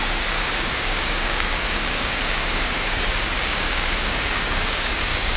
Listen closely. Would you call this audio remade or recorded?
remade